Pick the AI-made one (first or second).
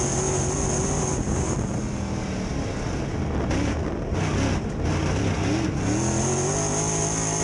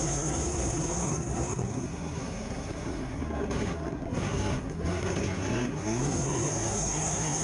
second